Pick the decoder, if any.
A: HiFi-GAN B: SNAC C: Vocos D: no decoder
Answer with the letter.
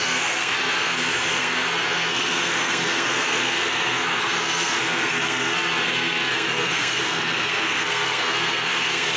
B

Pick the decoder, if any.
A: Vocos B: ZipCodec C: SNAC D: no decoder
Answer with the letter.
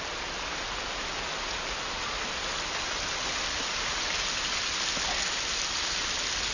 D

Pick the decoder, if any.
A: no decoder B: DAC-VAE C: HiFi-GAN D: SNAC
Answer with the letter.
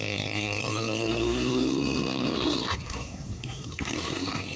D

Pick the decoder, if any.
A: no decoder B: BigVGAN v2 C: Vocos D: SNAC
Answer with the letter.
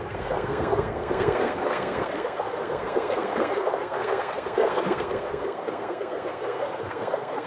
D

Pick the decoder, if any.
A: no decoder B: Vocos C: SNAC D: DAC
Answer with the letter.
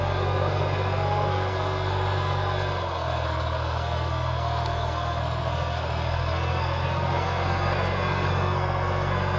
C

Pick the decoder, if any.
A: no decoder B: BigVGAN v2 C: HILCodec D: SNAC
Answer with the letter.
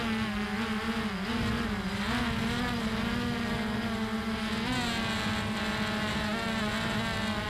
A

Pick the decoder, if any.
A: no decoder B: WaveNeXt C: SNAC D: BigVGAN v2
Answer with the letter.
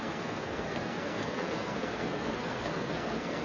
C